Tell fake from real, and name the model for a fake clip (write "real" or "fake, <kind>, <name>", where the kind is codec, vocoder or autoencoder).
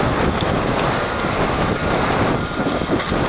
real